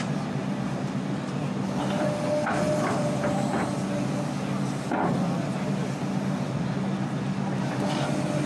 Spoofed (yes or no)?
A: no